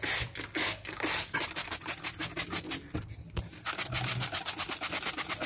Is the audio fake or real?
real